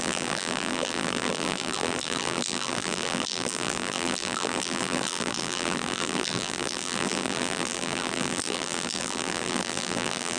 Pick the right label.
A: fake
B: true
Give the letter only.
A